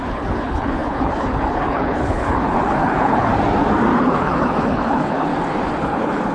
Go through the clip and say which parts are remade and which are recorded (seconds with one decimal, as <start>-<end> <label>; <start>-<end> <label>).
0.0-3.3 remade; 3.3-4.0 recorded; 4.0-5.3 remade; 5.3-5.8 recorded; 5.8-6.3 remade